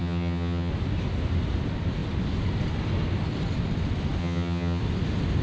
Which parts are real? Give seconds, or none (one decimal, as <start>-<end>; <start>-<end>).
0.7-4.2; 4.8-5.4